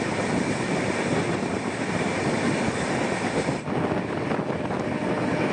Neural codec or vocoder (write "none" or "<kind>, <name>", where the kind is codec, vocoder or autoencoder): none